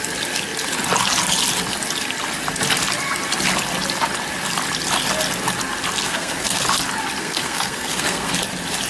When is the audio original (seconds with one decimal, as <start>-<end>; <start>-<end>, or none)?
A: 0.0-6.0; 6.6-7.2; 8.4-8.9